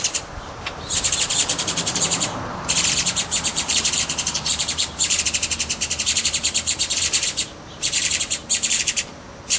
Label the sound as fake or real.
fake